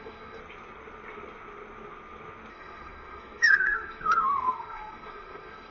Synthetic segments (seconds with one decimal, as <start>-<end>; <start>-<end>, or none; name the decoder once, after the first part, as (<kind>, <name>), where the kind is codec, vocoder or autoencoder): 0.0-0.4 (codec, SNAC); 2.5-5.7